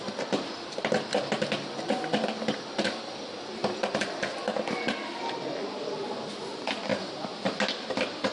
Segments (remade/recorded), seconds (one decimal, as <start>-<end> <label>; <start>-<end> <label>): 0.0-6.9 recorded; 6.9-7.4 remade; 7.4-8.3 recorded